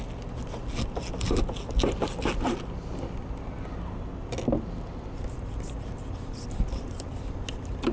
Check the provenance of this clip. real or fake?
real